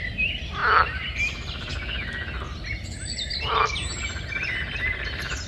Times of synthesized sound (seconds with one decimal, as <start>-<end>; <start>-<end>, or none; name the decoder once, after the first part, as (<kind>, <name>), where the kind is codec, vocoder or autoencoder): none